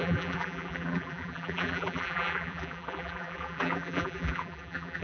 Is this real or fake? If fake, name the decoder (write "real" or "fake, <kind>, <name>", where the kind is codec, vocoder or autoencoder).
fake, vocoder, BigVGAN v2